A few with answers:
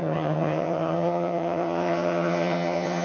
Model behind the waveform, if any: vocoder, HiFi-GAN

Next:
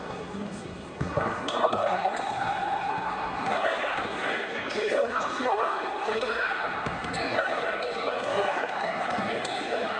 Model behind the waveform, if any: codec, SNAC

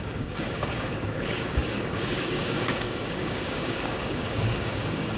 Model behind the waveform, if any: codec, DAC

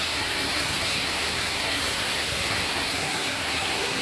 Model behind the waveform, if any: codec, SNAC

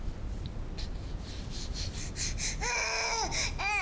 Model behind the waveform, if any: none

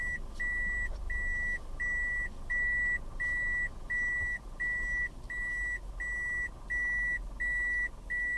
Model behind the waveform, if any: none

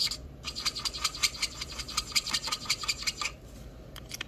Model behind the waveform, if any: vocoder, BigVGAN v2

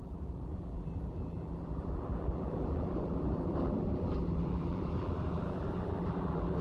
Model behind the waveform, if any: vocoder, BigVGAN v2